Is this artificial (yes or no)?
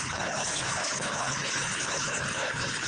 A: yes